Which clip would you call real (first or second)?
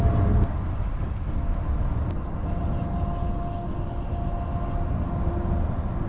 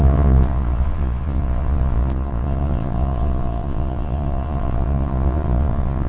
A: first